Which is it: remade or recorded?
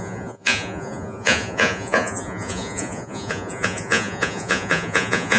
remade